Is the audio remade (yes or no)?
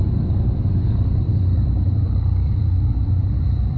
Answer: yes